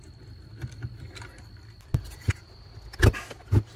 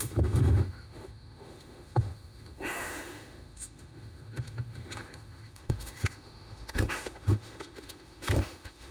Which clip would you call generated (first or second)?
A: second